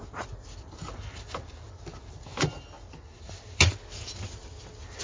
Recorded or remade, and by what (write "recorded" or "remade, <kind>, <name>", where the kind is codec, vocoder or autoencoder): recorded